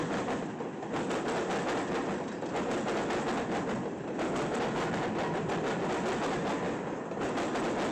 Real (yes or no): yes